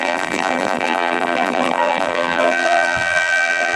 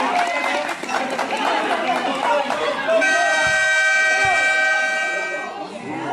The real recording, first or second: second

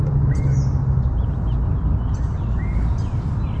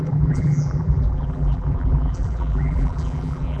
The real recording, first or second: first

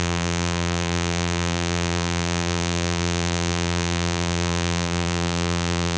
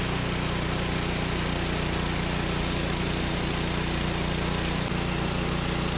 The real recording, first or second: second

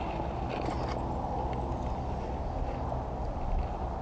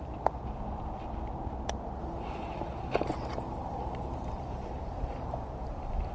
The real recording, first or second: first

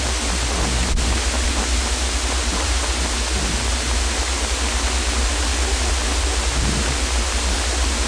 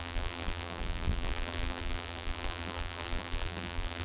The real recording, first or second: first